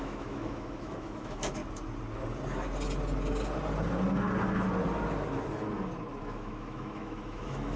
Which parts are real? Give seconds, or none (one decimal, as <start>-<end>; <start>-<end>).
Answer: 1.6-6.2